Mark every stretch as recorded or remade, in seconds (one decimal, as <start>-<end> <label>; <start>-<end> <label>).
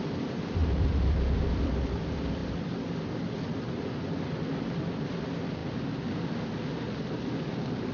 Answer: 0.0-5.6 remade; 5.6-7.9 recorded